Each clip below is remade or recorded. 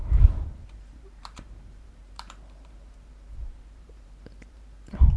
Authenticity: remade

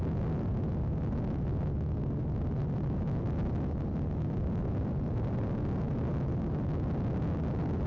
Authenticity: recorded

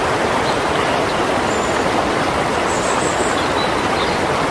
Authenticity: recorded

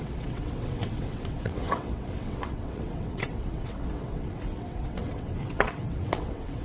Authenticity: remade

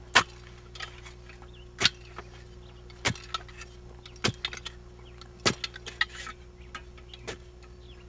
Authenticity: recorded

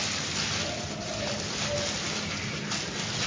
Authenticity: recorded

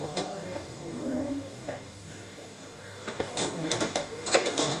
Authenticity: remade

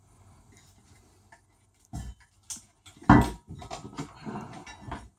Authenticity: recorded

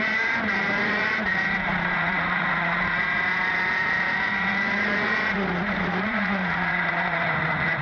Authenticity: remade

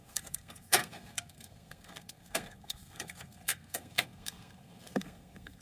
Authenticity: remade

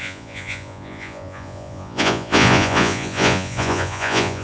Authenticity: remade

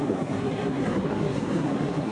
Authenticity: remade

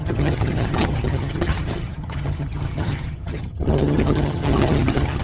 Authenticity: remade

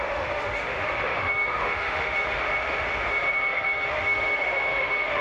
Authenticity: remade